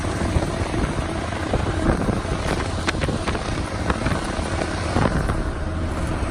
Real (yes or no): no